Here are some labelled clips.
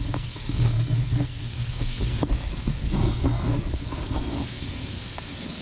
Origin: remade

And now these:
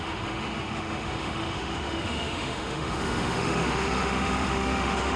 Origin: remade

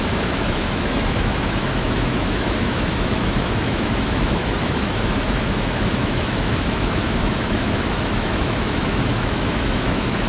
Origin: remade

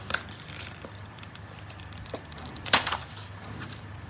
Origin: remade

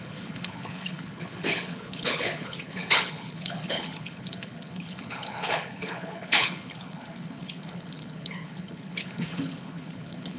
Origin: remade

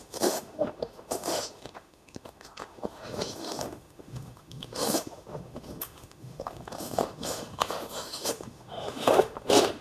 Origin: remade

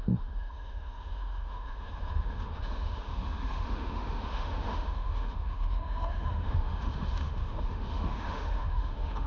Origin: remade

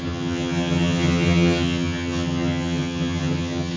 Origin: remade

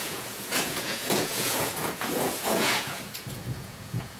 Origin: remade